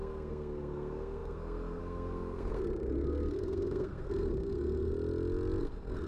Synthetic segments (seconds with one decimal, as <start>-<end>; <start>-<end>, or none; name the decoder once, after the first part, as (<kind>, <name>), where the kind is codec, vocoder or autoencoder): 0.0-4.9 (codec, SNAC); 5.6-6.1